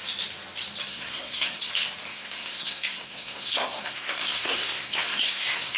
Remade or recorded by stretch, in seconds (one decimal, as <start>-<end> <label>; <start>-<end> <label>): 0.0-0.9 recorded; 0.9-1.7 remade; 1.7-2.1 recorded; 2.1-5.8 remade